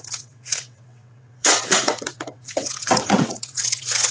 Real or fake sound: fake